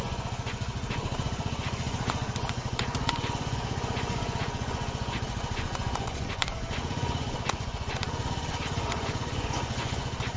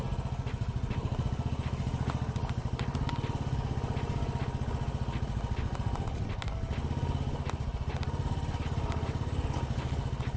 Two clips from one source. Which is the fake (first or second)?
first